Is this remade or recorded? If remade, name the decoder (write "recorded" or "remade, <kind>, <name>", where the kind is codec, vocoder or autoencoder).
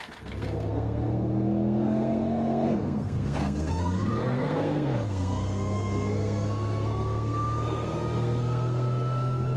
remade, codec, SNAC